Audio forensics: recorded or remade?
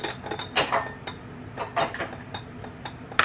recorded